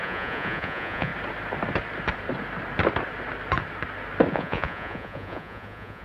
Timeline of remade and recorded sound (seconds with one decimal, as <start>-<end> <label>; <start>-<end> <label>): 0.0-1.1 remade; 1.1-4.3 recorded; 4.3-6.0 remade